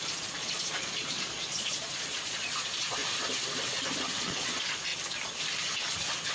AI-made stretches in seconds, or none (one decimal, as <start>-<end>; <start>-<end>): 0.0-3.0; 4.2-4.9